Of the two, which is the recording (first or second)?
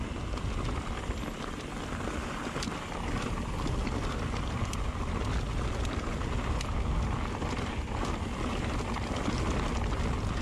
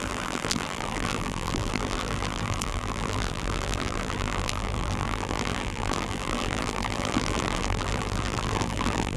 first